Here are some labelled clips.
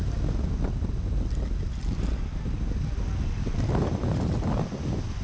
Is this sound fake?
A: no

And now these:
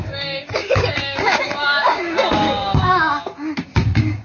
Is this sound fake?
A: yes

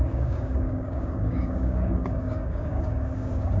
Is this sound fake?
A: yes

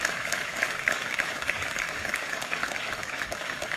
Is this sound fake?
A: yes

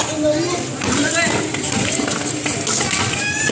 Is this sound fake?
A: no